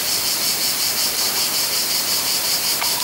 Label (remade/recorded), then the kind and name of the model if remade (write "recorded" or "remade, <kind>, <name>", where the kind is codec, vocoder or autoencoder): recorded